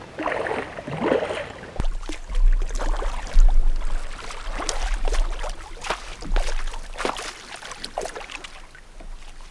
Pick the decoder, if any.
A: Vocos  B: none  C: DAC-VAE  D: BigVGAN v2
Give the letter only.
B